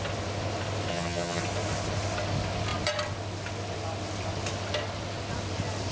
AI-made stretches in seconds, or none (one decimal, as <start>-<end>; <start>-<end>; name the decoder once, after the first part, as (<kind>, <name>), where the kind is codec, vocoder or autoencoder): 0.9-1.4 (vocoder, HiFi-GAN)